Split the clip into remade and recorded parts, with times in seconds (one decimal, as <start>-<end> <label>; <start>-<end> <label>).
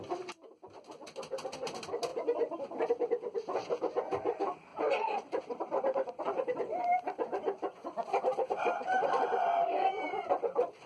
0.0-4.7 recorded; 4.7-5.4 remade; 5.4-10.9 recorded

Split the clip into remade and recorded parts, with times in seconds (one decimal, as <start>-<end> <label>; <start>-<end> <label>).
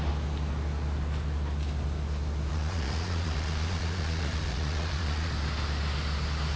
0.0-2.5 recorded; 2.5-5.3 remade; 5.3-6.6 recorded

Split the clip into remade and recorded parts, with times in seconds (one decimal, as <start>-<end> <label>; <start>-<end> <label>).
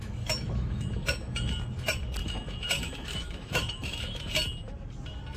0.0-1.5 remade; 1.5-2.2 recorded; 2.2-4.3 remade; 4.3-5.4 recorded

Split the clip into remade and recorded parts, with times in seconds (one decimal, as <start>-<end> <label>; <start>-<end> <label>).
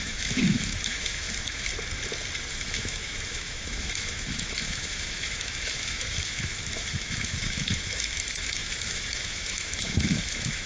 0.0-1.7 remade; 1.7-2.5 recorded; 2.5-10.7 remade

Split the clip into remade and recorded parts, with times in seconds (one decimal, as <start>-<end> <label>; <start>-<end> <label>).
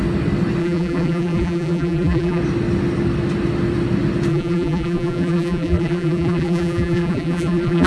0.0-0.6 recorded; 0.6-2.4 remade; 2.4-4.3 recorded; 4.3-7.9 remade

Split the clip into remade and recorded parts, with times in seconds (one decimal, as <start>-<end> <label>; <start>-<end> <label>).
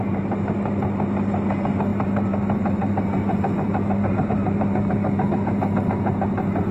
0.0-1.9 recorded; 1.9-5.3 remade; 5.3-6.7 recorded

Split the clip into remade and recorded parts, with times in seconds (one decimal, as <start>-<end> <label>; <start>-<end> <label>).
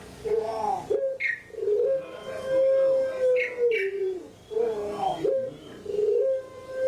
0.0-0.5 remade; 0.5-3.9 recorded; 3.9-4.4 remade; 4.4-6.9 recorded